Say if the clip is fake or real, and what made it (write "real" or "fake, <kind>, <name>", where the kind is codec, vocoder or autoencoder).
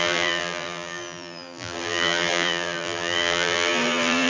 fake, vocoder, BigVGAN v2